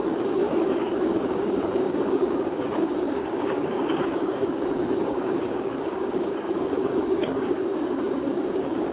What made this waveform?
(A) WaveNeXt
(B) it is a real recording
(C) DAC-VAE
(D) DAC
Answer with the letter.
D